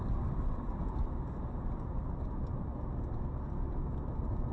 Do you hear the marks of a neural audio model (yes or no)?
no